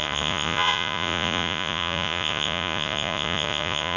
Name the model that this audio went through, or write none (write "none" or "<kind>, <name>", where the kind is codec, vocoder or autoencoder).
vocoder, Vocos